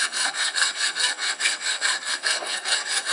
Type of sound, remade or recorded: remade